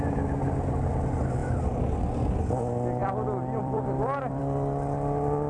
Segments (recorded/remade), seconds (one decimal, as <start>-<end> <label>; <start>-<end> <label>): 0.0-3.0 recorded; 3.0-4.4 remade; 4.4-5.5 recorded